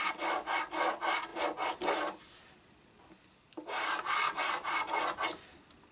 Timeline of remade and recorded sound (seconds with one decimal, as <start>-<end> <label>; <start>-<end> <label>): 0.0-5.9 recorded

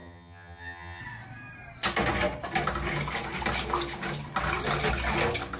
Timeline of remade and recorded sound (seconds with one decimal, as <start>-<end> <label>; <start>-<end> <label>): 0.0-1.0 remade; 1.0-5.6 recorded

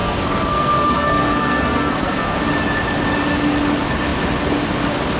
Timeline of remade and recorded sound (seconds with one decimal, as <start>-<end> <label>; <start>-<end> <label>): 0.0-2.4 remade; 2.4-5.2 recorded

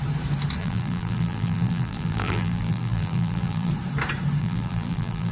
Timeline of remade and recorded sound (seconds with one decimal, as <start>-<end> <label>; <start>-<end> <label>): 0.0-0.6 recorded; 0.6-3.7 remade; 3.7-4.4 recorded; 4.4-5.3 remade